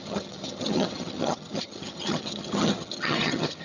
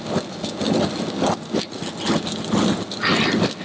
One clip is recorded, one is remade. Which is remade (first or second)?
first